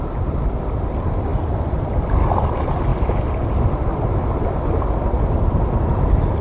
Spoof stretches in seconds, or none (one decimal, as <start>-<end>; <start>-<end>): none